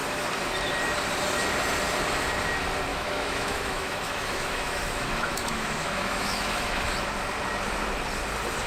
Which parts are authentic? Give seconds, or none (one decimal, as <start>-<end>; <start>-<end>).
0.0-2.9; 6.9-8.7